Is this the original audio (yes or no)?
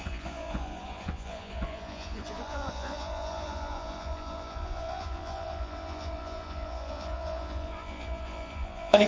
no